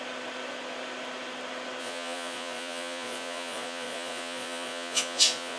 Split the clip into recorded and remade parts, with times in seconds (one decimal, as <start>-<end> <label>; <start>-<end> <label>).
0.0-1.8 recorded; 1.8-5.6 remade